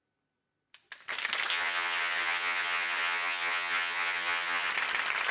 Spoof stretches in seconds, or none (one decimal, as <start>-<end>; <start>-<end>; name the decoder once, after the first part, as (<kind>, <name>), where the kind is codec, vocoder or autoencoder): 1.5-4.7 (vocoder, HiFi-GAN)

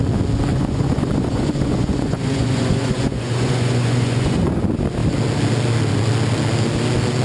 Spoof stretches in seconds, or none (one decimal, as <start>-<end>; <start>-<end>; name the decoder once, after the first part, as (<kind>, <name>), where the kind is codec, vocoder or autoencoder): 0.5-4.6 (vocoder, Vocos)

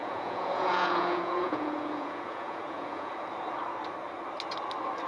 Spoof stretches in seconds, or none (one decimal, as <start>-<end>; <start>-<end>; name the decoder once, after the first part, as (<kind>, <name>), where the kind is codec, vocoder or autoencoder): 0.0-3.1 (vocoder, Vocos)

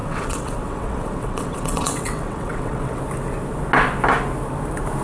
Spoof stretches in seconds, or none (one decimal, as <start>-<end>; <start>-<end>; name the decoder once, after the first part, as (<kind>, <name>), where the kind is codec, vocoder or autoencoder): 0.0-3.0 (vocoder, WaveNeXt)

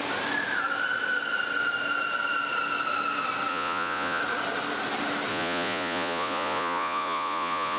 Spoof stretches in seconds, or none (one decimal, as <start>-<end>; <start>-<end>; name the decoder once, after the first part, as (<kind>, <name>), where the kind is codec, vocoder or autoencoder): 3.5-4.2 (vocoder, Vocos); 5.3-7.8

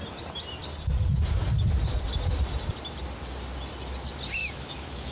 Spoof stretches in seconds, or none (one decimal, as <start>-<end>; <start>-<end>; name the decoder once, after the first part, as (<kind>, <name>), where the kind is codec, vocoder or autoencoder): 4.4-5.1 (autoencoder, DAC-VAE)

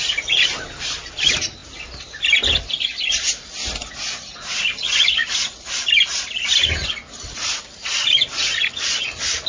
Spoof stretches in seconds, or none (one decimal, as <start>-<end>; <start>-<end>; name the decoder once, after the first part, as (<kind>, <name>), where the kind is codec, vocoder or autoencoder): none

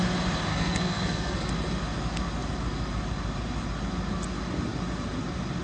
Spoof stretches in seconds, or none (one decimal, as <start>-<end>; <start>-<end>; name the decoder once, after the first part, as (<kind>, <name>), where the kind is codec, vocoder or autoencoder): 0.5-1.5 (codec, SNAC)